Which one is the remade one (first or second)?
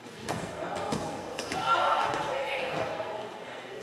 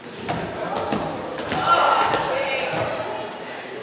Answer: first